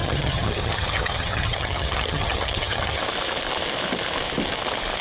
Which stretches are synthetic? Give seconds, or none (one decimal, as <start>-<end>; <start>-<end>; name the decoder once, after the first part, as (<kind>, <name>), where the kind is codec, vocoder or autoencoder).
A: 0.0-3.0 (vocoder, HiFi-GAN)